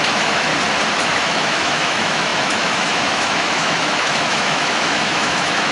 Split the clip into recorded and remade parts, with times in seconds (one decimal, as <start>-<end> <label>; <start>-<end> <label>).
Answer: 0.0-0.5 remade; 0.5-1.0 recorded; 1.0-5.7 remade